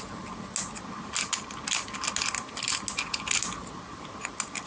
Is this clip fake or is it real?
real